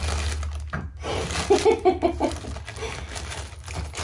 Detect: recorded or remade recorded